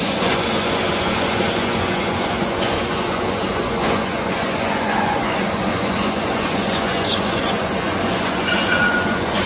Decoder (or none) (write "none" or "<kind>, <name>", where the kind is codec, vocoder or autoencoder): vocoder, Vocos